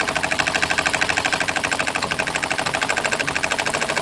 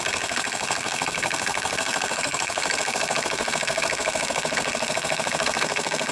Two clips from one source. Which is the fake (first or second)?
second